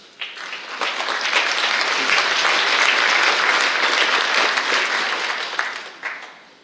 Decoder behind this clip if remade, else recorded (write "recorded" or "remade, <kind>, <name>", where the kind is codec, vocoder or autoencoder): recorded